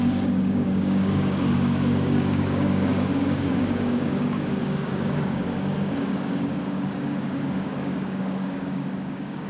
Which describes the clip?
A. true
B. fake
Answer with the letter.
B